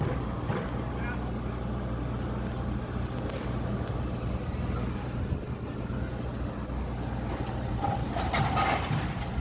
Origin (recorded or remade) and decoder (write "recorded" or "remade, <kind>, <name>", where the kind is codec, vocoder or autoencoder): recorded